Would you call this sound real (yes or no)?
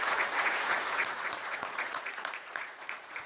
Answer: no